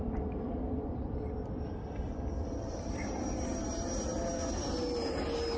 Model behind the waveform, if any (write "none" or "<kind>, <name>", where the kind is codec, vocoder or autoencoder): none